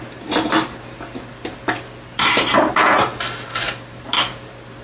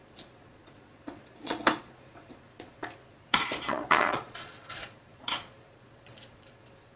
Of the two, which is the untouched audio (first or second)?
first